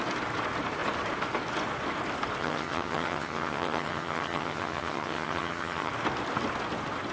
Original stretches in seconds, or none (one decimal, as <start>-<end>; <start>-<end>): 0.0-2.4; 5.9-7.1